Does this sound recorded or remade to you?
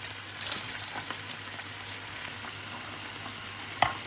recorded